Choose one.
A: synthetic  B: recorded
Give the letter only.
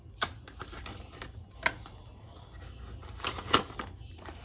B